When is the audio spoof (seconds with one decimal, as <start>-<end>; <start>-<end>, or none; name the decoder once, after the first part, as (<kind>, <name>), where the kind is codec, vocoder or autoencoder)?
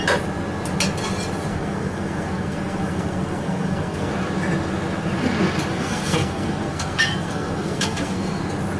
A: 1.5-4.1 (codec, SNAC); 5.7-8.4